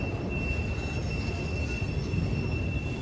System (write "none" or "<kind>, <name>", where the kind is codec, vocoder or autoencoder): none